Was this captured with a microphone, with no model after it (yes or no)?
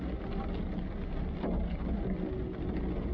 yes